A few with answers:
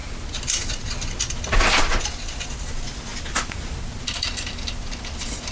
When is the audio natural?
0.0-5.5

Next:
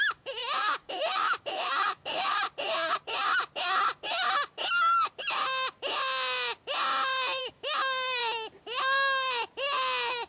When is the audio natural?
2.3-7.4; 8.2-10.3

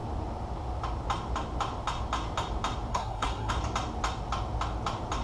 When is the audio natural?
0.0-2.9; 3.5-5.2

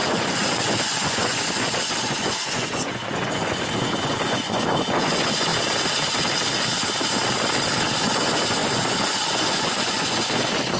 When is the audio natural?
5.5-8.0